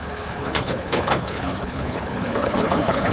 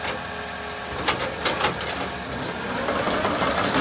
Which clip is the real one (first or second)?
second